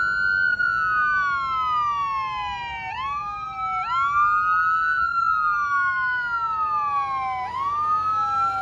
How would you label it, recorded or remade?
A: recorded